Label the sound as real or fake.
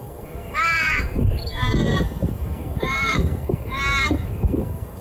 fake